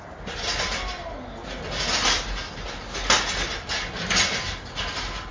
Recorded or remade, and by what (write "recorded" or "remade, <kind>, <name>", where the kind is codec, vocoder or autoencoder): recorded